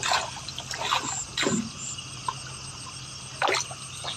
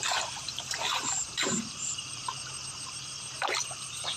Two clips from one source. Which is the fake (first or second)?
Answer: second